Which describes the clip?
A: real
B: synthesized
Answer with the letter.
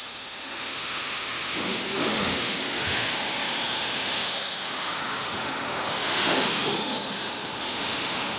B